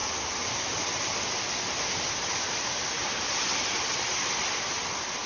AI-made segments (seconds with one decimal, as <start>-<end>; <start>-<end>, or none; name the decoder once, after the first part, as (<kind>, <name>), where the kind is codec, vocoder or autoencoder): none